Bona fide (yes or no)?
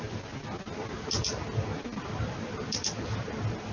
yes